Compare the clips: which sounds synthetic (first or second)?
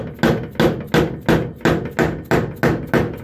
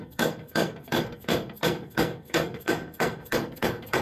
second